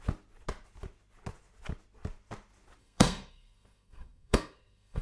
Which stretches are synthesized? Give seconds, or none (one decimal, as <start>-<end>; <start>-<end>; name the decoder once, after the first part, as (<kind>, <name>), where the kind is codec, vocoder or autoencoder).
2.8-5.0 (codec, SNAC)